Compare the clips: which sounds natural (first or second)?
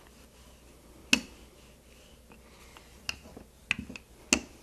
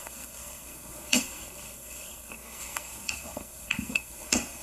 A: first